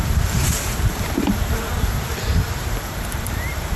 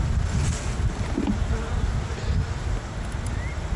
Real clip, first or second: second